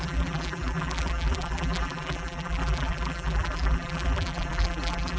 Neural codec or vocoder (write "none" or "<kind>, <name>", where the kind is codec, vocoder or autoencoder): vocoder, BigVGAN v2